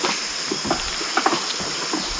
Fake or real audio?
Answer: real